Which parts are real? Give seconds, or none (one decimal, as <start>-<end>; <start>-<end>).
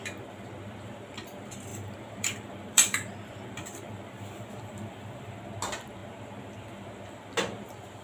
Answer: 0.0-1.7; 5.4-8.0